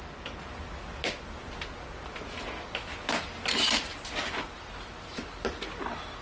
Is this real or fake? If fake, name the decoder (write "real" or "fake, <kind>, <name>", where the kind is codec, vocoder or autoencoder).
real